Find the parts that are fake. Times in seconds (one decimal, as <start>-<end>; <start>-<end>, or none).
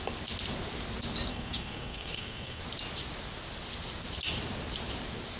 1.3-2.6